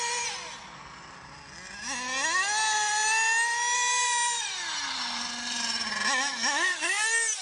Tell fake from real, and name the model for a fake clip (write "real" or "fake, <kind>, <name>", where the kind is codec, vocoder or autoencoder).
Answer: real